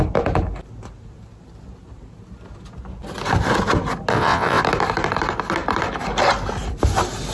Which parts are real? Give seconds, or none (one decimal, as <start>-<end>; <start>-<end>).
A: 0.0-4.1; 4.6-7.3